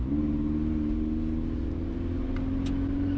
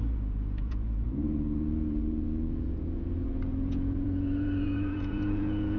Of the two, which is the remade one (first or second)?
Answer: second